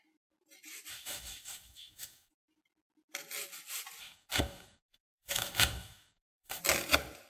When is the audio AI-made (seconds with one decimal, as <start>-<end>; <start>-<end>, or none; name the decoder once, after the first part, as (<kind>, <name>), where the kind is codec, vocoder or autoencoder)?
0.9-2.3 (codec, DAC); 4.0-6.6